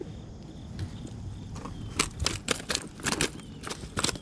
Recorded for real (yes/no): yes